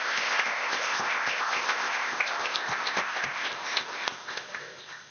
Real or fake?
fake